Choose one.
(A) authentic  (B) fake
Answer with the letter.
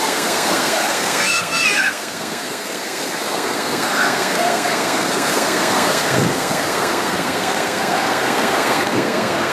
B